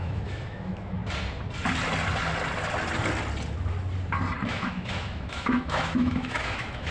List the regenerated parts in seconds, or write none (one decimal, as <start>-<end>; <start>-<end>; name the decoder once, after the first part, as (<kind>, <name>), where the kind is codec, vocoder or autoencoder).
0.0-1.0 (autoencoder, DAC-VAE); 4.5-6.9

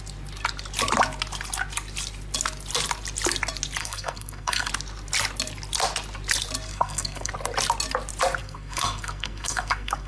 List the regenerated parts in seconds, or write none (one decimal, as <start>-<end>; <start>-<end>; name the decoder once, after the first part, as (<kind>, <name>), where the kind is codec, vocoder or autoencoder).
3.8-4.7 (codec, SNAC); 6.7-7.3; 8.4-10.1

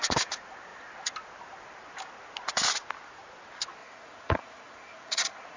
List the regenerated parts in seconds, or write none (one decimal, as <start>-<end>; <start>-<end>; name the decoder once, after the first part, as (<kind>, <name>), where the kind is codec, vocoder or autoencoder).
3.8-5.6 (vocoder, Vocos)

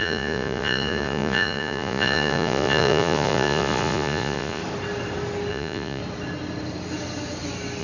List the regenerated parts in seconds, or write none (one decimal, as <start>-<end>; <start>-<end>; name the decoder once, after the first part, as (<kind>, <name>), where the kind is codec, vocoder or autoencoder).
0.0-4.6 (vocoder, Vocos); 5.5-6.0

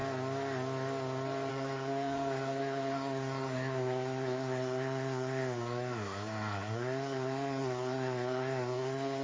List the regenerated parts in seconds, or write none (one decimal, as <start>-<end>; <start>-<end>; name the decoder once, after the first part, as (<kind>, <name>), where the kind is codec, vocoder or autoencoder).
1.5-9.2 (codec, SNAC)